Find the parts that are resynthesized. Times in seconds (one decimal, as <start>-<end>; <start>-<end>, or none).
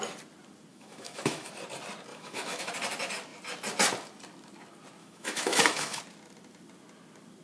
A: 0.7-1.5; 2.1-2.7; 5.0-6.0